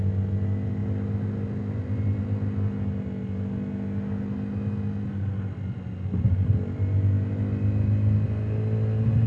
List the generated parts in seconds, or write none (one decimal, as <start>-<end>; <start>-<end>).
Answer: none